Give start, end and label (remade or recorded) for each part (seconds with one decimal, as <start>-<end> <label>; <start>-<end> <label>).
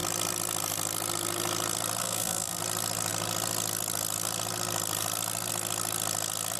0.0-2.0 recorded; 2.0-2.6 remade; 2.6-6.6 recorded